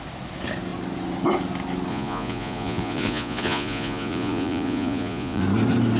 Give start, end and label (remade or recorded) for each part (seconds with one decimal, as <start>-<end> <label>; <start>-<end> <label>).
0.0-1.9 recorded; 1.9-5.4 remade; 5.4-6.0 recorded